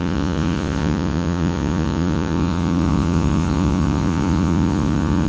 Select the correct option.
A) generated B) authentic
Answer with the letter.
A